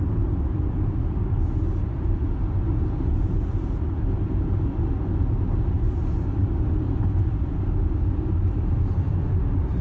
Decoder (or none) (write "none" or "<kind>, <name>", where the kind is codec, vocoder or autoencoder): none